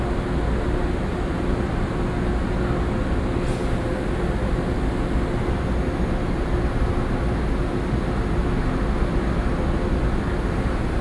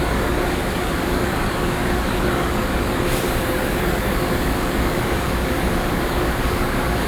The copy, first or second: second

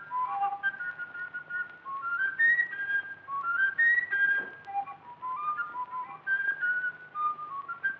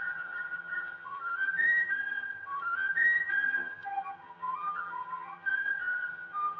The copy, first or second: second